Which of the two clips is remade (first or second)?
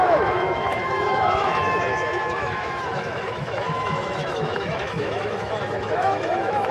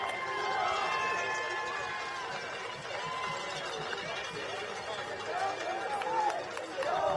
first